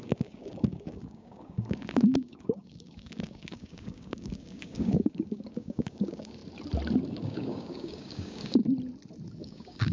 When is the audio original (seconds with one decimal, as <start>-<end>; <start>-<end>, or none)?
6.4-7.1; 8.6-9.4